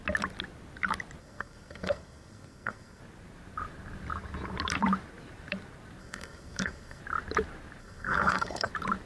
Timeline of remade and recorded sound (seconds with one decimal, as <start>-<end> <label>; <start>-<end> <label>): 0.0-1.2 recorded; 1.2-3.0 remade; 3.0-6.0 recorded; 6.0-7.0 remade; 7.0-7.8 recorded; 7.8-8.7 remade; 8.7-9.1 recorded